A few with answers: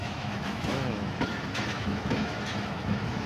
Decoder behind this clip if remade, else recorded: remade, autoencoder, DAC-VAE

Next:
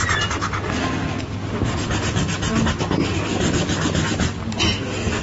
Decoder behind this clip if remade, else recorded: recorded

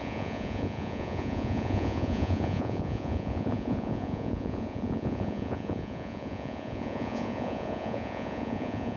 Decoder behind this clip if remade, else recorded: remade, vocoder, Vocos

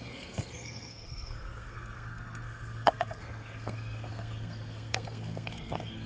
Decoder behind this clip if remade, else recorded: remade, codec, SNAC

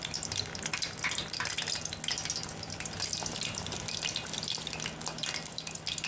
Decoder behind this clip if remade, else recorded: recorded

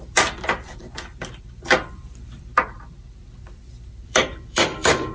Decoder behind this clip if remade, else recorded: remade, vocoder, BigVGAN v2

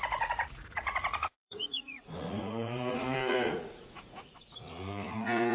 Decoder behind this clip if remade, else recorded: remade, vocoder, Vocos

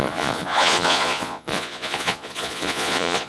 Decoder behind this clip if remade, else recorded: remade, vocoder, Vocos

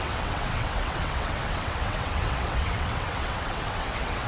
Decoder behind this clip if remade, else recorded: remade, vocoder, WaveNeXt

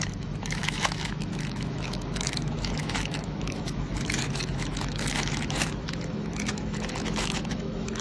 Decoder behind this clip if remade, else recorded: remade, autoencoder, DAC-VAE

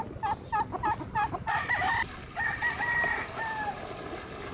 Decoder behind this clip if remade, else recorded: remade, vocoder, BigVGAN v2